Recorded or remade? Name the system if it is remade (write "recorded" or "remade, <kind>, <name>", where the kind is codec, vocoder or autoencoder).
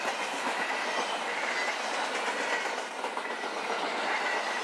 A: recorded